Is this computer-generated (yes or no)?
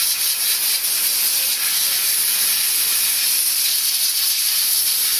no